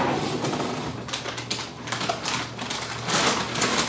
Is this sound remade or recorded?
recorded